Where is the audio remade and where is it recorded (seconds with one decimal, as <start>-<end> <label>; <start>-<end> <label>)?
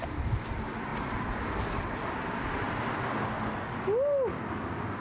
0.0-5.0 recorded